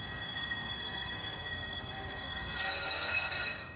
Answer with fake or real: fake